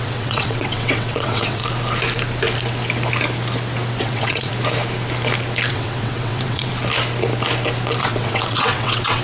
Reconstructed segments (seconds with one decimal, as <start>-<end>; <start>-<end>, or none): 0.0-1.6; 4.0-4.5; 5.7-6.7; 8.0-9.2